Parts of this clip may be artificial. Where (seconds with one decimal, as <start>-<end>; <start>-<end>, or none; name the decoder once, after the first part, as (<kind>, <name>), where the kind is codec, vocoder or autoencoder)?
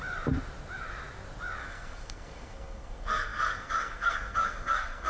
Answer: 1.6-5.1 (codec, SNAC)